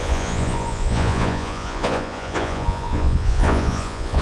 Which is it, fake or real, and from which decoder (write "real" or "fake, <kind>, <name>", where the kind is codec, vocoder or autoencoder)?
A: fake, vocoder, Vocos